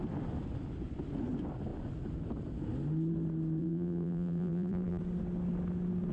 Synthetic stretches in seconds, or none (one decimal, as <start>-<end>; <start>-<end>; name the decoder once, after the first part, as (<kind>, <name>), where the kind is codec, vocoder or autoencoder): 3.6-5.0 (vocoder, BigVGAN v2)